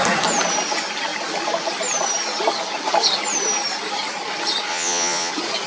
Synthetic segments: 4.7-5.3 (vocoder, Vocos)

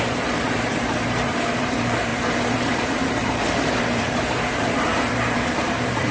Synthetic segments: 0.0-6.1 (vocoder, BigVGAN v2)

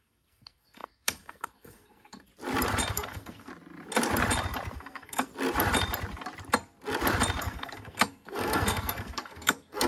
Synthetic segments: 0.0-2.3 (codec, SNAC); 2.9-3.5; 4.7-5.3; 7.4-9.9

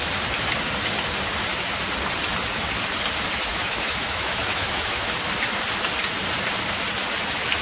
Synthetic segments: 3.5-5.1 (autoencoder, DAC-VAE)

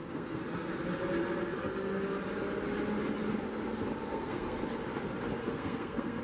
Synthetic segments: 0.0-0.4 (codec, SNAC); 4.1-4.6; 5.4-6.2

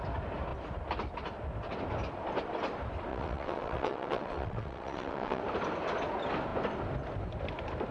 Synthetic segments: 3.1-5.4 (vocoder, WaveNeXt)